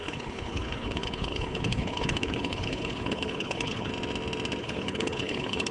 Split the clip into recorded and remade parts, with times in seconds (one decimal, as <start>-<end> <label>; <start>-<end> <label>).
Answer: 0.0-3.9 remade; 3.9-4.6 recorded; 4.6-5.7 remade